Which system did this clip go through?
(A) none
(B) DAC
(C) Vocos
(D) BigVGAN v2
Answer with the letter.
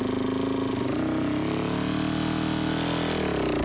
A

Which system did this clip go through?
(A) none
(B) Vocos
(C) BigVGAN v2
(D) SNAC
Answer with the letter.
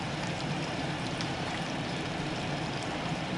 C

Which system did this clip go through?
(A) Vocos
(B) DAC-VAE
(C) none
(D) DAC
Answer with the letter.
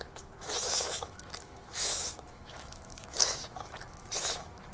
B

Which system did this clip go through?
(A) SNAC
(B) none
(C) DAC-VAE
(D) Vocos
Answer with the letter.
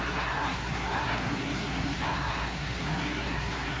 A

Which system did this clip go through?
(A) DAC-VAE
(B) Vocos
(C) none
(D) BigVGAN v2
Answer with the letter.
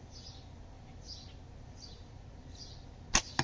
C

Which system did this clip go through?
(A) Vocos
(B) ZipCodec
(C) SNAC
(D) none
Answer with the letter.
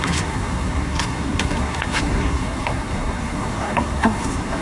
C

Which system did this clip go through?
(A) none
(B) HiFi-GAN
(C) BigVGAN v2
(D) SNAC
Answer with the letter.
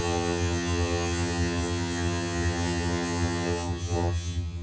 B